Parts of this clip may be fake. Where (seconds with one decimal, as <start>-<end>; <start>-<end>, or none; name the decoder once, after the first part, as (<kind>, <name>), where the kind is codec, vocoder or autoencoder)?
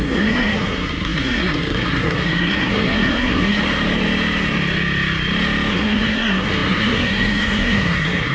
0.0-3.6 (codec, SNAC); 5.7-8.3